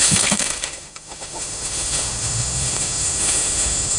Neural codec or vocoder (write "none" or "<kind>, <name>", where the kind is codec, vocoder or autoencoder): autoencoder, DAC-VAE